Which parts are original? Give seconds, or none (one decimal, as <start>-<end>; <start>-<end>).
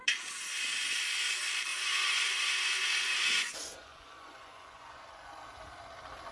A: 0.0-1.7; 5.3-6.3